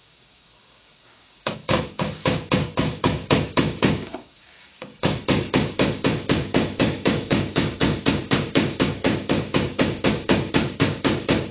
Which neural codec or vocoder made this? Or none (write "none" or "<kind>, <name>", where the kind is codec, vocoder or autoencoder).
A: codec, DAC